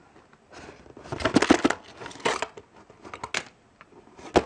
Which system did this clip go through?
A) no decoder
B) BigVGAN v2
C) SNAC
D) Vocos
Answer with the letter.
A